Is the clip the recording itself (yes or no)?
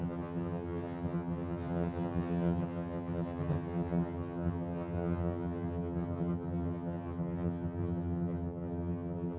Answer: no